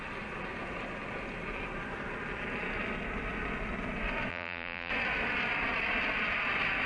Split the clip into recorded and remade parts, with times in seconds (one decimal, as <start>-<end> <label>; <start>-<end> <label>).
0.0-4.3 recorded; 4.3-4.9 remade; 4.9-6.9 recorded

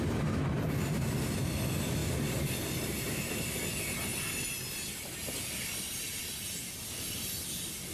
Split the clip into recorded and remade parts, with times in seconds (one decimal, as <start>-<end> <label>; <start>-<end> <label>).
0.0-7.9 recorded

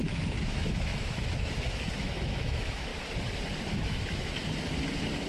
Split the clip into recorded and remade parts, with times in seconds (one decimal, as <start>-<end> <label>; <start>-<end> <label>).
0.0-2.9 remade; 2.9-3.7 recorded; 3.7-4.4 remade; 4.4-5.3 recorded

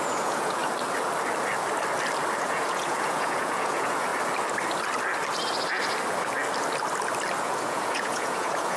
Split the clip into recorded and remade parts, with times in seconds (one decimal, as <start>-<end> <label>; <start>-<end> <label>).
0.0-0.6 remade; 0.6-2.4 recorded; 2.4-4.1 remade; 4.1-7.4 recorded; 7.4-8.8 remade

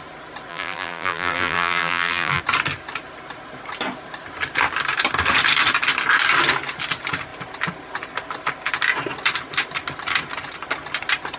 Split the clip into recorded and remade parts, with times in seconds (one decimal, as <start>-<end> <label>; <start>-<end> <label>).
0.0-0.5 recorded; 0.5-2.4 remade; 2.4-11.4 recorded

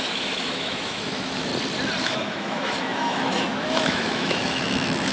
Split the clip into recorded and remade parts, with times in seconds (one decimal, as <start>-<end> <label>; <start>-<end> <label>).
0.0-1.5 remade; 1.5-2.0 recorded; 2.0-5.1 remade

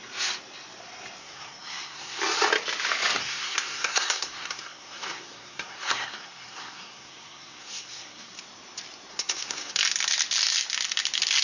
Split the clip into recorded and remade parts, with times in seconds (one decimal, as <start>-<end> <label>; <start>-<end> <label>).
0.0-1.2 recorded; 1.2-2.2 remade; 2.2-3.2 recorded; 3.2-8.3 remade; 8.3-9.1 recorded; 9.1-9.8 remade; 9.8-11.4 recorded

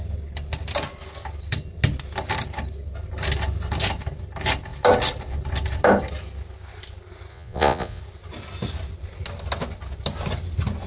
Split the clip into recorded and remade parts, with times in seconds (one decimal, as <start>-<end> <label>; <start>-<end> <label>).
0.0-7.3 recorded; 7.3-8.0 remade; 8.0-10.9 recorded